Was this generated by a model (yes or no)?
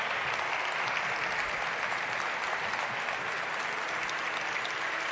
no